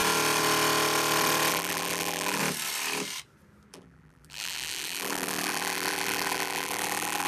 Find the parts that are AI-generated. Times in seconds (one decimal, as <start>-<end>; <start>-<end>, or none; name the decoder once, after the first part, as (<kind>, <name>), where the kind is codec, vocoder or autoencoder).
1.5-2.4 (vocoder, BigVGAN v2); 3.7-7.3